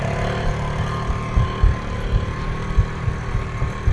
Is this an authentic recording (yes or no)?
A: yes